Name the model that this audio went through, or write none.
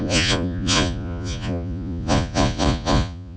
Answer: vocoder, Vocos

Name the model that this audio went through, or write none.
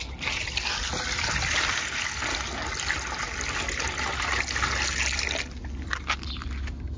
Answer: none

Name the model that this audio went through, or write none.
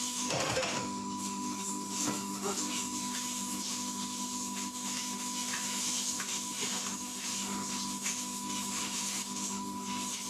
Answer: autoencoder, DAC-VAE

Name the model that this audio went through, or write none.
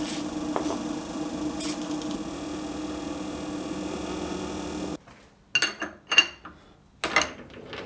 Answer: none